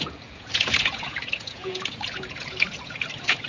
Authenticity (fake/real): fake